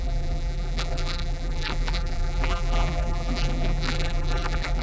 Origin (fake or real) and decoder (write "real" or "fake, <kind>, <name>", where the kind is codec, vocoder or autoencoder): fake, vocoder, BigVGAN v2